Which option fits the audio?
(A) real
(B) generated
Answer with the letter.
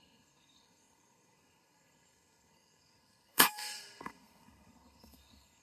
B